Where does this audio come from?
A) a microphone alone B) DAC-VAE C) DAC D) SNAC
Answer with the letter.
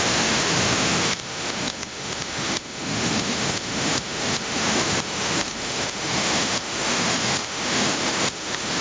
B